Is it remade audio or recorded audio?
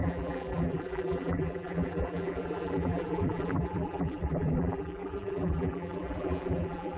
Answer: remade